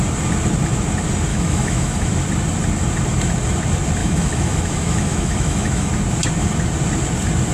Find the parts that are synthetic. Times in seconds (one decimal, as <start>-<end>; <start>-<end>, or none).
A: 1.3-2.1; 4.0-5.9